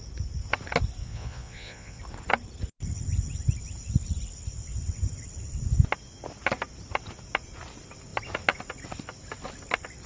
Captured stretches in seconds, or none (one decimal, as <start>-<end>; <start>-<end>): 0.0-1.0; 2.0-10.1